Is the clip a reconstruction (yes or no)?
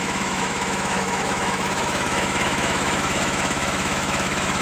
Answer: yes